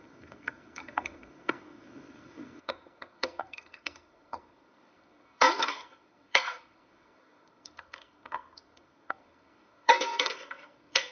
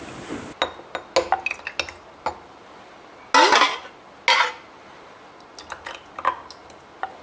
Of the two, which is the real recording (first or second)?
second